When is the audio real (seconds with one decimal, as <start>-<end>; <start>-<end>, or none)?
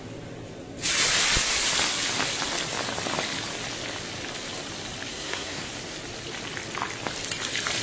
0.0-5.1; 5.7-7.8